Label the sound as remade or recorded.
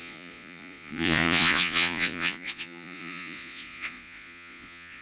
remade